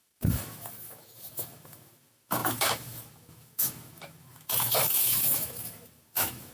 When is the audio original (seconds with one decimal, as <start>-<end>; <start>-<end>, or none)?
none

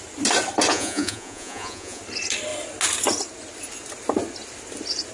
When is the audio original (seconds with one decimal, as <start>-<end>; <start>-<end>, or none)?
0.0-0.7; 2.0-5.1